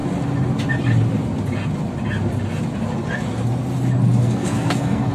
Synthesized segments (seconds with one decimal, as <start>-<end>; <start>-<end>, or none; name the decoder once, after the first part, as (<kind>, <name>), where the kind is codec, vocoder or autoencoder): 4.2-5.1 (codec, SNAC)